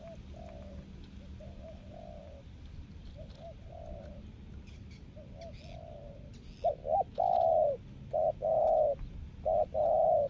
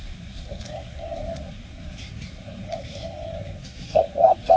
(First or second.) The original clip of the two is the first